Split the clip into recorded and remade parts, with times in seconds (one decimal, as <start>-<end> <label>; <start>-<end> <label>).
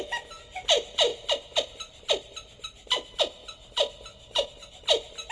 0.0-5.3 recorded